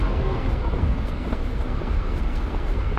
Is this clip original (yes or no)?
no